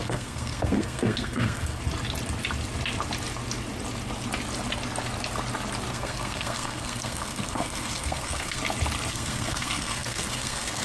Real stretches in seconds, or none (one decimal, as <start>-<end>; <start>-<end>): 1.8-5.9; 8.6-9.1